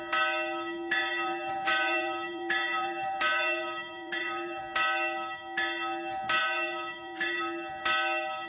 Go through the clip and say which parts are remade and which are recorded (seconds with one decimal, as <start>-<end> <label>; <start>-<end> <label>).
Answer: 0.0-1.0 recorded; 1.0-4.6 remade; 4.6-6.4 recorded; 6.4-7.4 remade; 7.4-8.5 recorded